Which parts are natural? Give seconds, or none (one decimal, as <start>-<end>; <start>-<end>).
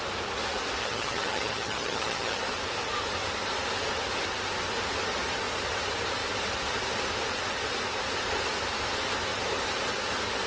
0.0-0.8; 2.4-10.5